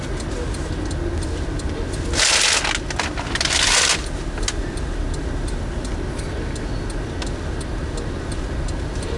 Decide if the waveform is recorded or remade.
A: recorded